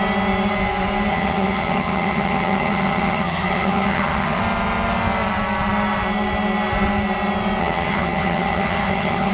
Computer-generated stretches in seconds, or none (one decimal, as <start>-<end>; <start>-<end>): 1.1-4.4; 7.6-9.3